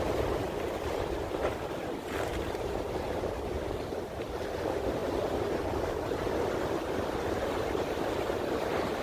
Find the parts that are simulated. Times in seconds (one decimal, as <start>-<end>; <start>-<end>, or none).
0.0-9.0